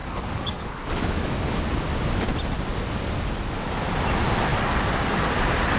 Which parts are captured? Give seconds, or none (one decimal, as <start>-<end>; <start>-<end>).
1.6-4.5; 5.3-5.8